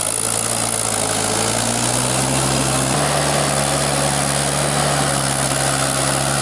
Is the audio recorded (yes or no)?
yes